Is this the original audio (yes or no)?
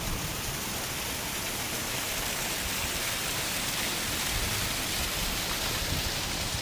yes